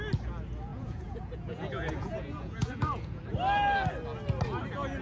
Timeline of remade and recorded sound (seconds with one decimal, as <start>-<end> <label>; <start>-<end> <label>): 0.0-0.7 recorded; 0.7-3.2 remade; 3.2-5.0 recorded